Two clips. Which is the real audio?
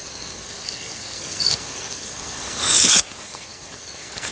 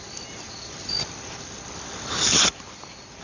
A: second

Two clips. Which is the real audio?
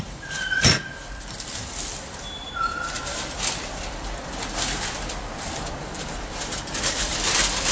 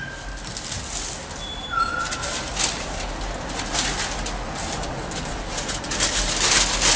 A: second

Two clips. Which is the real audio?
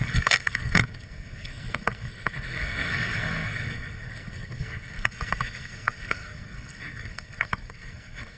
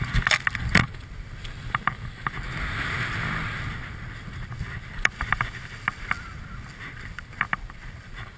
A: second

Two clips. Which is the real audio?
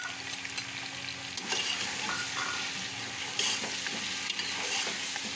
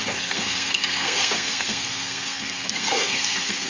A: first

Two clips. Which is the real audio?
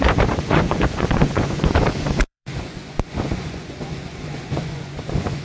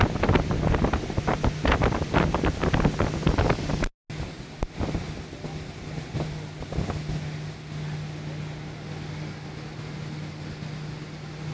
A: second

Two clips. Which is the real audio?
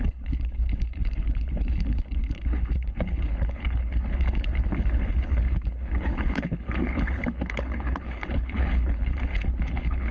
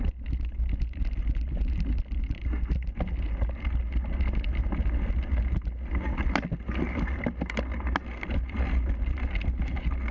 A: second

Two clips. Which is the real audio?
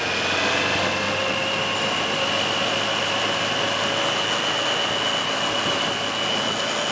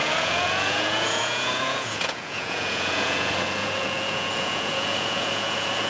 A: first